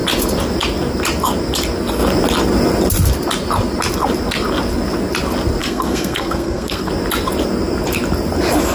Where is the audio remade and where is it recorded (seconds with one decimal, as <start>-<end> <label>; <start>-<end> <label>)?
0.0-5.6 recorded; 5.6-6.9 remade; 6.9-8.7 recorded